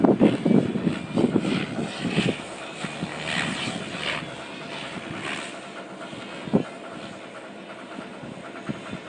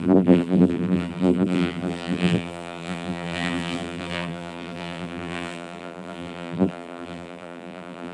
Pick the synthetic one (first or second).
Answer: second